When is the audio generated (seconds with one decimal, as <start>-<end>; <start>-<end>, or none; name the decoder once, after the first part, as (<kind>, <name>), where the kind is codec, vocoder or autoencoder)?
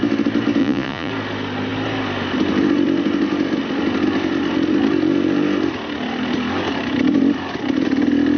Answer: 0.6-1.1 (vocoder, Vocos)